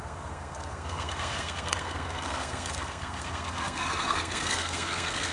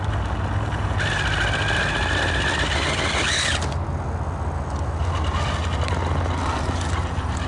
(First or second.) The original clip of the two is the second